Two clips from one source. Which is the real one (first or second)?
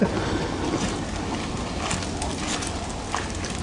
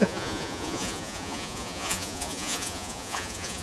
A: first